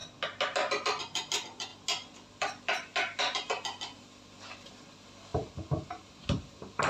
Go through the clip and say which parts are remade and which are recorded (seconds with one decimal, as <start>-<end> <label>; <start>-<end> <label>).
0.0-6.9 recorded